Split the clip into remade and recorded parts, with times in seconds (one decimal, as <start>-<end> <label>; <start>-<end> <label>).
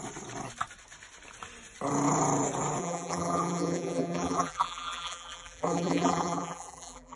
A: 0.0-2.8 recorded; 2.8-7.2 remade